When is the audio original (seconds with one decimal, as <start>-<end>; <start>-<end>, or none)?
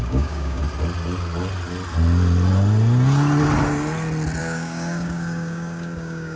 0.6-4.4